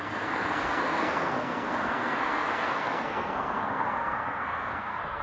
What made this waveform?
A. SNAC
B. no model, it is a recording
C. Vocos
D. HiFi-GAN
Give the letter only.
A